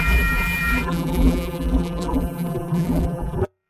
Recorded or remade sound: remade